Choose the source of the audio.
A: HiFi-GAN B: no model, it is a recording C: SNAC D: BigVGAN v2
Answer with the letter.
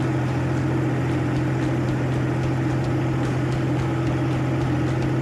B